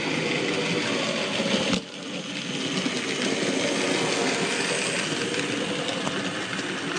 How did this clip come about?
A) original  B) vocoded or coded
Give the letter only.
A